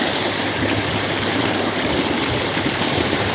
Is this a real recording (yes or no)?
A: no